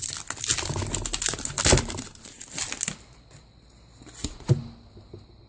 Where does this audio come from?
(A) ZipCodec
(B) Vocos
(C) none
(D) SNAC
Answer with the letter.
C